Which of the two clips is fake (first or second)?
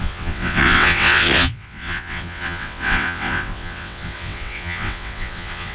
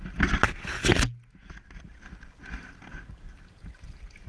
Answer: first